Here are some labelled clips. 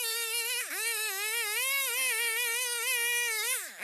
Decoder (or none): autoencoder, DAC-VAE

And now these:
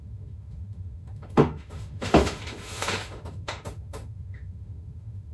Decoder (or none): autoencoder, DAC-VAE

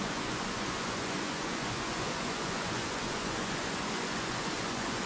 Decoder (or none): vocoder, Vocos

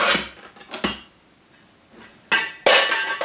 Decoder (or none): none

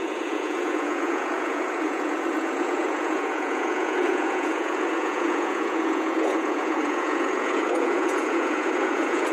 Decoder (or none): vocoder, Vocos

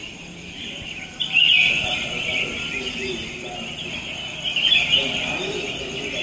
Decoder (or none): none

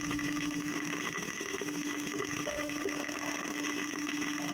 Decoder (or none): autoencoder, DAC-VAE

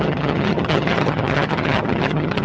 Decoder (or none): vocoder, HiFi-GAN